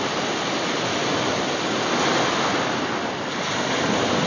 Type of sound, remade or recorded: recorded